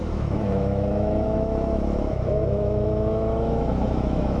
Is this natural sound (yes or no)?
no